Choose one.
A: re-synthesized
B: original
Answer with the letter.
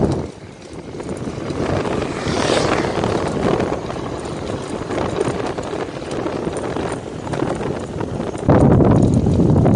B